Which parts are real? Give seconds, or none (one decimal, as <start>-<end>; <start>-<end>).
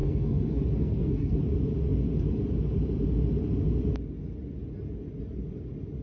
1.4-6.0